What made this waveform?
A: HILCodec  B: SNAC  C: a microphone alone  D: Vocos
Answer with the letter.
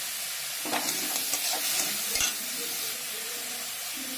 C